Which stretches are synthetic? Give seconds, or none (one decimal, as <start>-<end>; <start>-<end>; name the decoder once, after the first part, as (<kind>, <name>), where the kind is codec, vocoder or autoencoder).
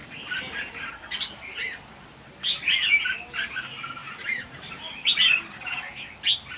4.0-5.8 (vocoder, BigVGAN v2)